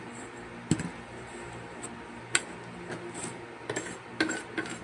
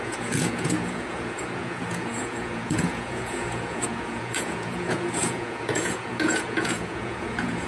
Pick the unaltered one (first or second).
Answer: first